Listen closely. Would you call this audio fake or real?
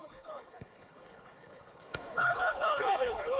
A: fake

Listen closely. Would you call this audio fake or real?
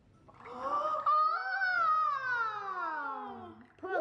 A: real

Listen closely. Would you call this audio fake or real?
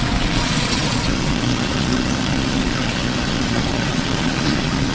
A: fake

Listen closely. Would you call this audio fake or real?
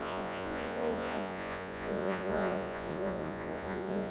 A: fake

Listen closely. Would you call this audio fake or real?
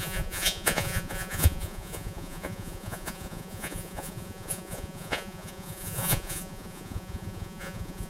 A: fake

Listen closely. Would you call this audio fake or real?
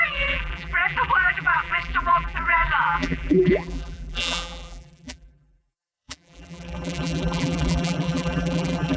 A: fake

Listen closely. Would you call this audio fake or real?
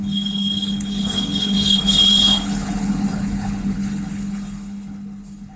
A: fake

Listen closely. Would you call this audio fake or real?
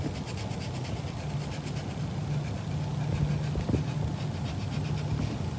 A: real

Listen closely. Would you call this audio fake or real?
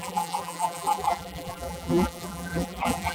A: fake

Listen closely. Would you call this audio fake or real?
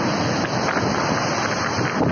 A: real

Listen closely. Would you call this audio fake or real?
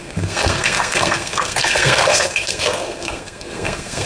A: fake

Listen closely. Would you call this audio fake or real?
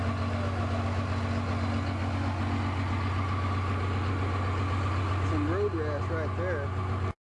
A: real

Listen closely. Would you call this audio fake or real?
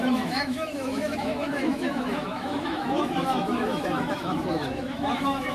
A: fake